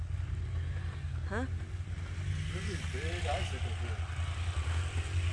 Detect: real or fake real